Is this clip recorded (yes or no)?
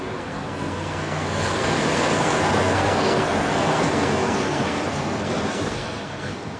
no